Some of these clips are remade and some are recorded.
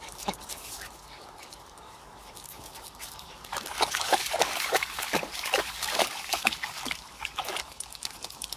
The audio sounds remade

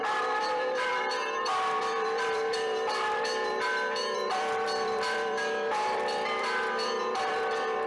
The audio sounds remade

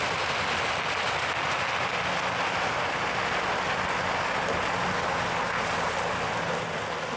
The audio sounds recorded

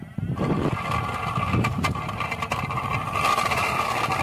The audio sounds recorded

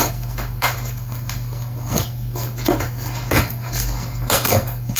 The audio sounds remade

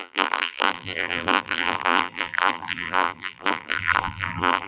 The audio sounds remade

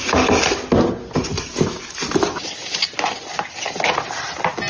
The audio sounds recorded